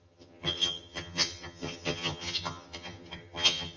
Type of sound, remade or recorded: remade